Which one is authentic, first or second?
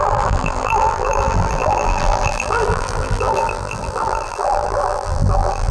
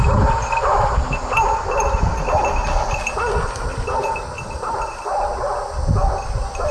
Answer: second